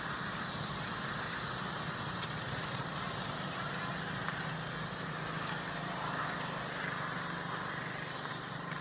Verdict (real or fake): real